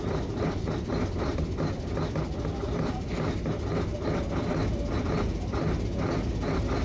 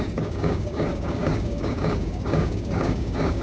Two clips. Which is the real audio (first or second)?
first